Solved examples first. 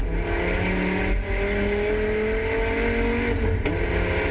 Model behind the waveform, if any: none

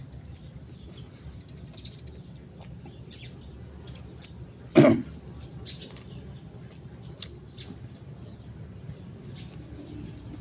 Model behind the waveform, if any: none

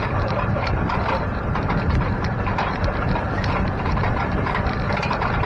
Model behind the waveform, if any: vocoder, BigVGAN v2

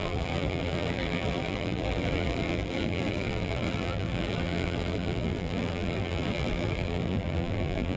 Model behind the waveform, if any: vocoder, BigVGAN v2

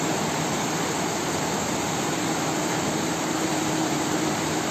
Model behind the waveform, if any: vocoder, BigVGAN v2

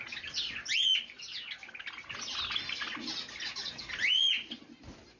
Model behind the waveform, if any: none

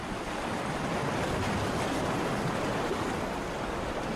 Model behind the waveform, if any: none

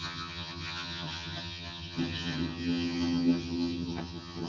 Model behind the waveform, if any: vocoder, HiFi-GAN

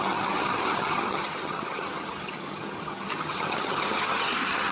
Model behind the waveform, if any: vocoder, HiFi-GAN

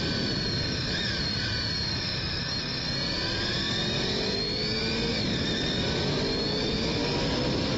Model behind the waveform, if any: none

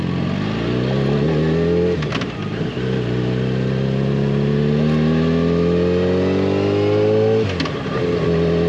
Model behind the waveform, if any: none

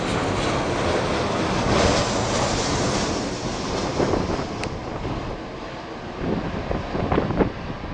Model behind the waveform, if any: none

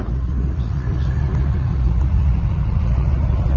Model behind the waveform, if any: vocoder, Vocos